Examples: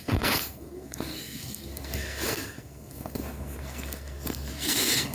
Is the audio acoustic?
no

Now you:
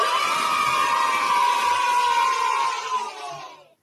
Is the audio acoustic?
yes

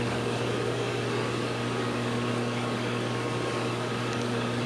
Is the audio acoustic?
no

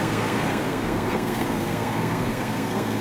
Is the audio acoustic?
no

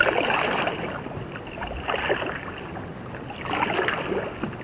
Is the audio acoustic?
yes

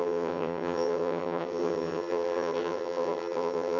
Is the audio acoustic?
no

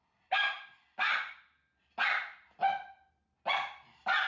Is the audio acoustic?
yes